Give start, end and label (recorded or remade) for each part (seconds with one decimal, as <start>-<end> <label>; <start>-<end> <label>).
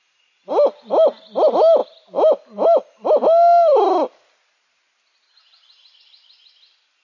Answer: 0.0-7.0 recorded